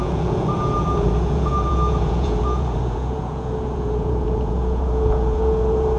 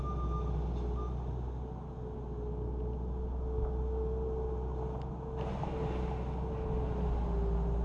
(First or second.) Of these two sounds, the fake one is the first